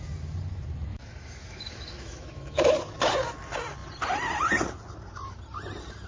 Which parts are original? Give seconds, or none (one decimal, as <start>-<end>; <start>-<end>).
0.0-0.9; 2.7-6.1